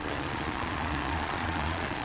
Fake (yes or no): yes